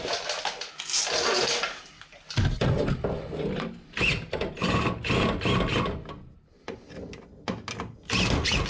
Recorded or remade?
recorded